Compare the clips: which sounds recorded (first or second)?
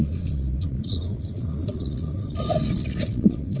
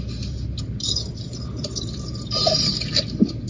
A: second